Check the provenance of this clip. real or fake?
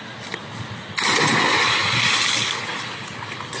real